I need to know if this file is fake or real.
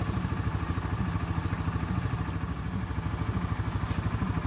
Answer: real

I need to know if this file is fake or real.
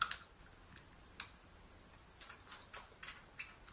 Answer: real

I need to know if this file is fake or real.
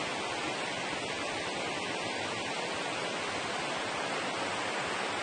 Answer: real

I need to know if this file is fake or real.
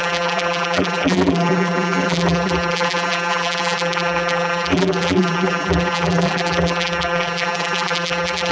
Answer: fake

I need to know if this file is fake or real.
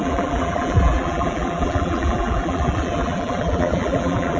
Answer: fake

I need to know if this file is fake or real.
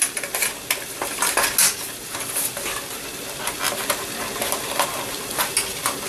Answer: real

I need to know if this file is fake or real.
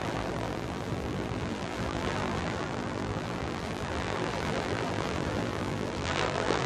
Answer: fake